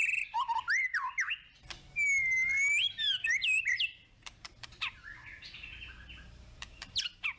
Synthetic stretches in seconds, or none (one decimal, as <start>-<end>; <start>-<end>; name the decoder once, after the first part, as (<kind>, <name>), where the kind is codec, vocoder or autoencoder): 0.0-0.6 (vocoder, BigVGAN v2); 2.8-7.0